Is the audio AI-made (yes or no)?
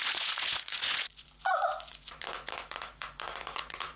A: yes